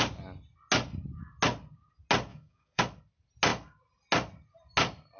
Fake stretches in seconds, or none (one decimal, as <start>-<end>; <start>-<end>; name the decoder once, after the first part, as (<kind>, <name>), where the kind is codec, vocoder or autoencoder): 2.3-2.8 (codec, DAC)